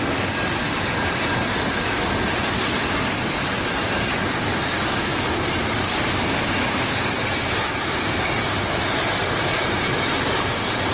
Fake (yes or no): no